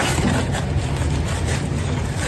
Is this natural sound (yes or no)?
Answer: yes